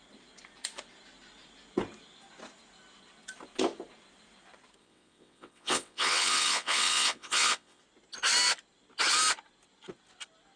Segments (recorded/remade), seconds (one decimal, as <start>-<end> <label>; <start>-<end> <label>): 0.0-4.8 recorded; 4.8-7.8 remade; 7.8-10.6 recorded